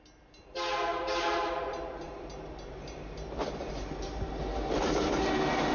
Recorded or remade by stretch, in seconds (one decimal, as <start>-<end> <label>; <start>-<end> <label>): 0.0-0.9 recorded; 0.9-4.3 remade; 4.3-5.7 recorded